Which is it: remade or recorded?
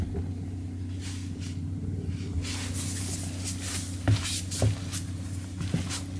recorded